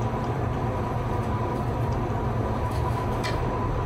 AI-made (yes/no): yes